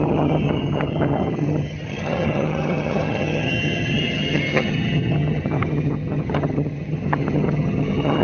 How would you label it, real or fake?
fake